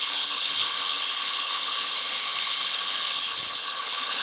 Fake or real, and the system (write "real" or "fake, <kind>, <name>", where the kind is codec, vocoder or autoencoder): fake, codec, HILCodec